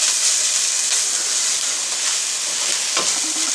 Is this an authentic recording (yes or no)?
yes